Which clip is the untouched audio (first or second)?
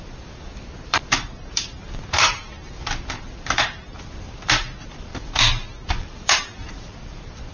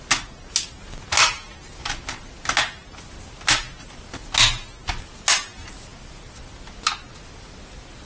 second